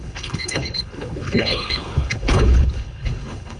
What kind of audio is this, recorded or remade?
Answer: remade